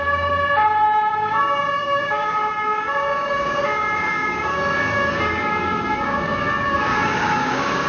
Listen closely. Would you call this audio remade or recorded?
remade